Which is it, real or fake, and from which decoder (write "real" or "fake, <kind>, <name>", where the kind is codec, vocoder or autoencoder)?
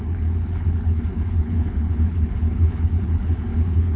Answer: fake, codec, HILCodec